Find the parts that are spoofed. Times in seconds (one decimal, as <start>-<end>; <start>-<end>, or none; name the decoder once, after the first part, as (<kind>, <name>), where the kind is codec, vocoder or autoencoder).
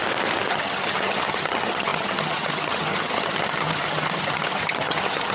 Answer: 0.5-5.3 (vocoder, HiFi-GAN)